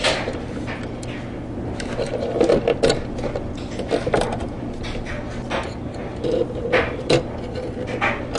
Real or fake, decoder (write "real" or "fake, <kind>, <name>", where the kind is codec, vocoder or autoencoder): real